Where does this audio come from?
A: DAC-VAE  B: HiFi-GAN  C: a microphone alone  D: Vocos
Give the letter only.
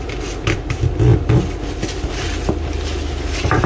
C